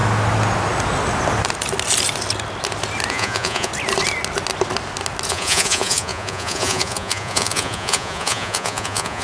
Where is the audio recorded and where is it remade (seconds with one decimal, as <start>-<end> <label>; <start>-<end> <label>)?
0.0-3.1 recorded; 3.1-3.7 remade; 3.7-5.3 recorded; 5.3-9.2 remade